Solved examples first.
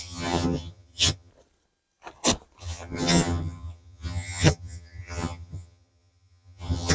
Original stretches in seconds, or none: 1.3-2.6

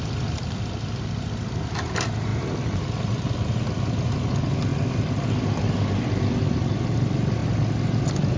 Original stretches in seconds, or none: 0.0-8.4